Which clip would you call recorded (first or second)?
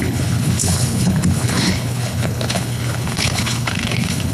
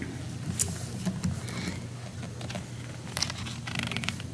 second